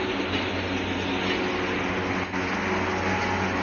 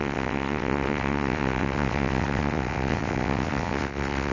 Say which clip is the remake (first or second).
second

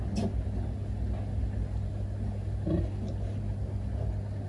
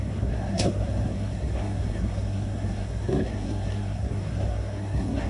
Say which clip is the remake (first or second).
second